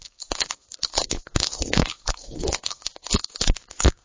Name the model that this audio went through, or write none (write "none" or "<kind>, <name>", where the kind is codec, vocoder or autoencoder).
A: codec, SNAC